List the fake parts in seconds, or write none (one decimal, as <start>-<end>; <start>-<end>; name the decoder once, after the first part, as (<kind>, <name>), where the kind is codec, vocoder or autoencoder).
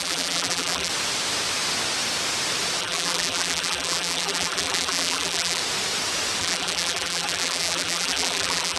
0.0-0.9 (vocoder, BigVGAN v2); 2.8-5.6; 6.4-8.8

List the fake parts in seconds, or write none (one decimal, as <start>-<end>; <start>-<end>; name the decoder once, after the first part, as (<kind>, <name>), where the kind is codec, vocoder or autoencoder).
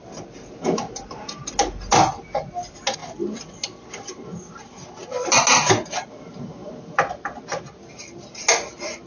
none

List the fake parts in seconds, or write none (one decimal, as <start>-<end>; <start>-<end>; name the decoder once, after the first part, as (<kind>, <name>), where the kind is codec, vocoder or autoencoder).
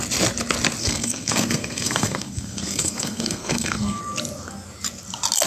0.8-4.0 (codec, SNAC)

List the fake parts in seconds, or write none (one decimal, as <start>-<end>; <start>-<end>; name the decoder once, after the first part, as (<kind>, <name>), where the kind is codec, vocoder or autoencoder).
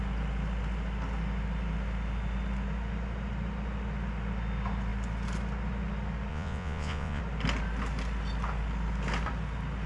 6.3-7.2 (vocoder, Vocos)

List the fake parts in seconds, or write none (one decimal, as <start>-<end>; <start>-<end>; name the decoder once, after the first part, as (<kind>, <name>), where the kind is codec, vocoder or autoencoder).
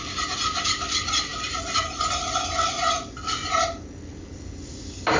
none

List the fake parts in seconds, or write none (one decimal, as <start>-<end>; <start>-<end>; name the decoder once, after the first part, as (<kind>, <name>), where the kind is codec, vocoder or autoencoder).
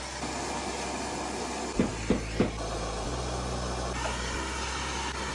none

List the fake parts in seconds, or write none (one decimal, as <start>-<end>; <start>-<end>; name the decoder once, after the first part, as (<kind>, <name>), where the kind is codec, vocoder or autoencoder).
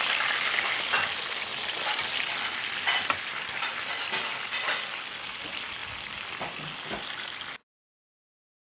none